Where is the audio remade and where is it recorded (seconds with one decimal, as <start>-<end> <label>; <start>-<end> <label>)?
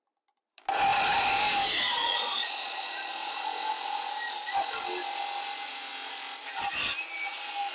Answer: 0.0-2.0 recorded; 2.0-3.1 remade; 3.1-7.7 recorded